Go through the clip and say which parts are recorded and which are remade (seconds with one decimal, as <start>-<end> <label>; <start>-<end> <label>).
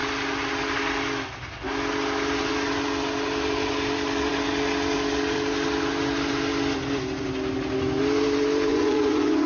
0.0-8.7 recorded; 8.7-9.5 remade